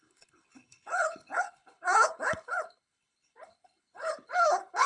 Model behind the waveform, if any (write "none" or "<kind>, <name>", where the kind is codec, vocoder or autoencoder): codec, HILCodec